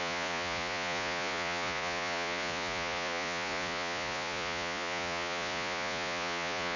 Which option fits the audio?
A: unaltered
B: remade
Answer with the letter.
B